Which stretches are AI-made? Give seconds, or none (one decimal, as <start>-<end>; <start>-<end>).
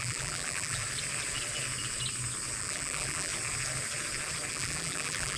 0.0-0.8; 2.6-3.3; 4.5-5.4